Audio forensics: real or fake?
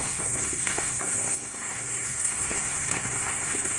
fake